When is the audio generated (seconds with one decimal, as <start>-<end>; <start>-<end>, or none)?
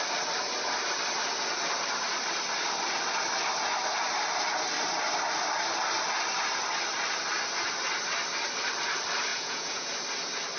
9.3-9.9